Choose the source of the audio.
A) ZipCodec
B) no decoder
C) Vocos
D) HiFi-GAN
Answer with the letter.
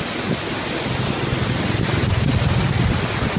B